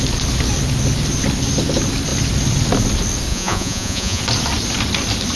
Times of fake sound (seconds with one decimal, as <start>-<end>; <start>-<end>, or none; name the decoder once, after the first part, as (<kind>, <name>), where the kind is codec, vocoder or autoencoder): 3.3-4.2 (vocoder, Vocos)